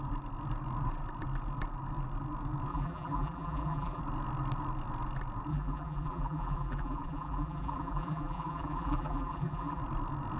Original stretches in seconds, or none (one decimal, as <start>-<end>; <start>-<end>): 0.0-2.7; 4.0-5.5; 9.8-10.4